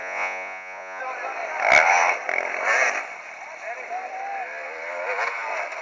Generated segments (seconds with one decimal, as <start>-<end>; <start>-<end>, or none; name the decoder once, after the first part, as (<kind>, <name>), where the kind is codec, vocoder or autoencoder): 0.0-1.0 (vocoder, Vocos)